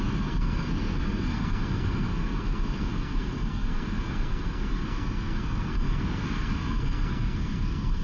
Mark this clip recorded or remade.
remade